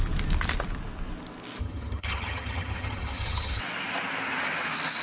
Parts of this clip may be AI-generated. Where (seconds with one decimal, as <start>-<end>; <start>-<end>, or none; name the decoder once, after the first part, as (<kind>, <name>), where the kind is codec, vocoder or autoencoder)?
1.6-3.6 (vocoder, HiFi-GAN)